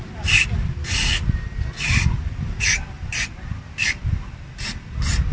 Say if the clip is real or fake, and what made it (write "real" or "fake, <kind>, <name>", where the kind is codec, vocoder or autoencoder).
real